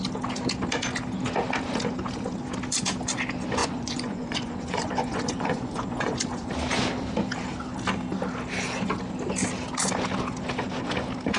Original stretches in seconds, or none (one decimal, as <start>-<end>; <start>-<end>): 0.0-3.6; 6.5-11.4